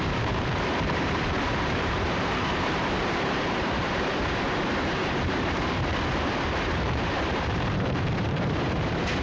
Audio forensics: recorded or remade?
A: remade